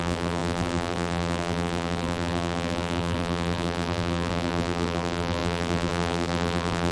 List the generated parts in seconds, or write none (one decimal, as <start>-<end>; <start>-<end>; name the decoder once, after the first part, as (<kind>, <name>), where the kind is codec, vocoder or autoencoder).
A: 0.0-6.9 (vocoder, BigVGAN v2)